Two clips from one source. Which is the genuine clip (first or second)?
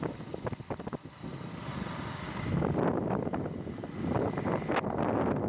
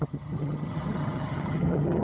first